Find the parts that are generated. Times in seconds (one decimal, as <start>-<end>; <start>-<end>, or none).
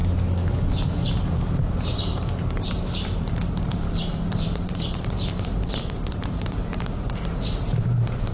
1.1-8.3